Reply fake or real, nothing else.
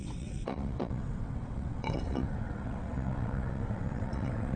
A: fake